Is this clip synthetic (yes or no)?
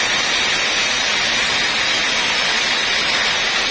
no